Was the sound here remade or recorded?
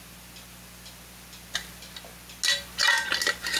recorded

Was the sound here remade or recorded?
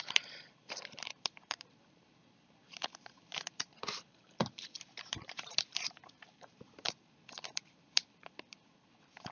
remade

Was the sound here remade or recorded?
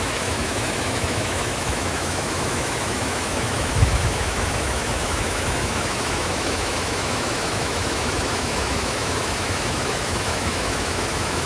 remade